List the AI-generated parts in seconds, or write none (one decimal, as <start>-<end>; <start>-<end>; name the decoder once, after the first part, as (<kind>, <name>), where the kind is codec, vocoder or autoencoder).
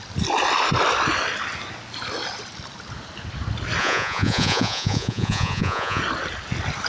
3.8-6.0 (vocoder, Vocos)